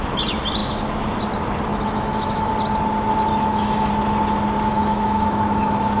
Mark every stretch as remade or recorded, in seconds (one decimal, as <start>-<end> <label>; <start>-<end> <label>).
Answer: 0.0-1.7 recorded; 1.7-2.5 remade; 2.5-3.3 recorded; 3.3-3.9 remade; 3.9-4.7 recorded; 4.7-6.0 remade